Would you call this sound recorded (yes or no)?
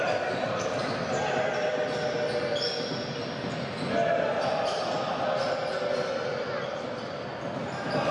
yes